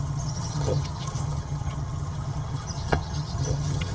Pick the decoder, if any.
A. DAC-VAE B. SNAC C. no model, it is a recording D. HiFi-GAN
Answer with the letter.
D